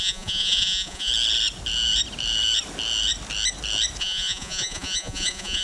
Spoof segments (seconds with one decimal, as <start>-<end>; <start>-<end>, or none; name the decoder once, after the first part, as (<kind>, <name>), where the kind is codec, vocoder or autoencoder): 0.0-1.1 (vocoder, Vocos); 4.0-5.6